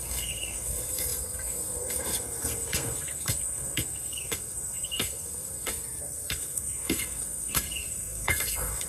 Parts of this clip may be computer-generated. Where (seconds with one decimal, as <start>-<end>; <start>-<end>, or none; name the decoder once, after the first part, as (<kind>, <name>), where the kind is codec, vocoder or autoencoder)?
0.0-8.9 (codec, SNAC)